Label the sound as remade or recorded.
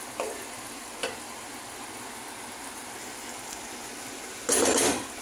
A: recorded